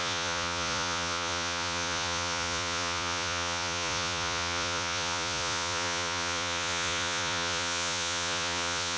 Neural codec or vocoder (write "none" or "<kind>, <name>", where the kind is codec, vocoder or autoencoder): vocoder, Vocos